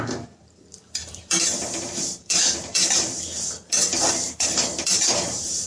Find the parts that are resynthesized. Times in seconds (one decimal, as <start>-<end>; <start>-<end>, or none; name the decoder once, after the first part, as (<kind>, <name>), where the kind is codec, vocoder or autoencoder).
1.0-3.2 (vocoder, BigVGAN v2); 3.6-5.7